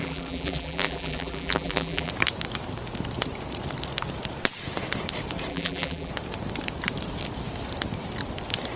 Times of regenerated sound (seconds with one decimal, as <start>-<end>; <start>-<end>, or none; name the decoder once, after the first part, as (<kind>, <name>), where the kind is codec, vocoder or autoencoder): 0.0-2.1 (vocoder, BigVGAN v2); 5.5-6.1